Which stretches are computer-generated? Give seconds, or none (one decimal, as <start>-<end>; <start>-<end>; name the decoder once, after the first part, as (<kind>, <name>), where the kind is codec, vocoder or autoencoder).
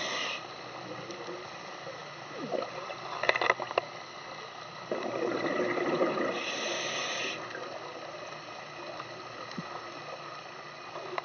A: none